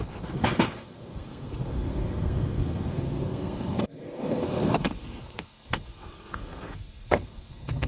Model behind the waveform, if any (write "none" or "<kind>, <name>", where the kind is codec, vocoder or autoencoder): codec, SNAC